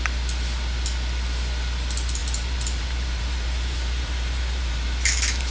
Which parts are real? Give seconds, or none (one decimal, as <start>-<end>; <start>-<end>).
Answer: 0.0-2.2